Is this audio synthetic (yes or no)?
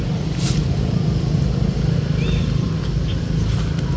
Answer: no